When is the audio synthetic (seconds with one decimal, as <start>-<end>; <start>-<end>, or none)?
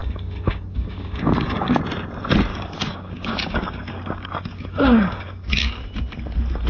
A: 0.0-1.8; 2.5-5.8